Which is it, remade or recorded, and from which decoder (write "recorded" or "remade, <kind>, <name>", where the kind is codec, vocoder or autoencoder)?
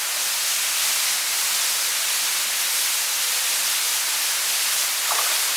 recorded